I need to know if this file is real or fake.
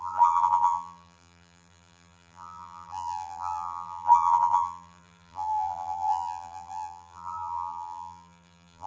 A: fake